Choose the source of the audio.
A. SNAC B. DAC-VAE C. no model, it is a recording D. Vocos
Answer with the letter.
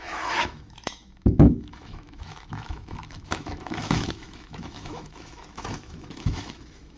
B